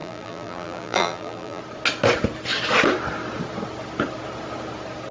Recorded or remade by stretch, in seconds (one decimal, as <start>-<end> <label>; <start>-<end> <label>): 0.0-1.6 remade; 1.6-5.1 recorded